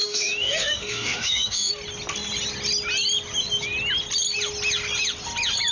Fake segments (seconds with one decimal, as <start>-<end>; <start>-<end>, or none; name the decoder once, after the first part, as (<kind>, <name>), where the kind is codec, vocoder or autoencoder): 0.0-1.7 (autoencoder, DAC-VAE)